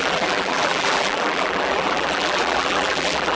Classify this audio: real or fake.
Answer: fake